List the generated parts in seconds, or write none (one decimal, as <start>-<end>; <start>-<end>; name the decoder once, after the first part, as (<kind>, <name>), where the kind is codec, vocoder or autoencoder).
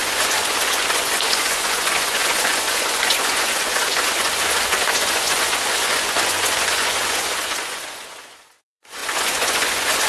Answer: 0.0-10.1 (vocoder, Vocos)